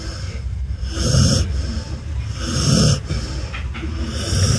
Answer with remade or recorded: recorded